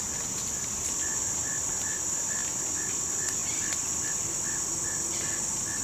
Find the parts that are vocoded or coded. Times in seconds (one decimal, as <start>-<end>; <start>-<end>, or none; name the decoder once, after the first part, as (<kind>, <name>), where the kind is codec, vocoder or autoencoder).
none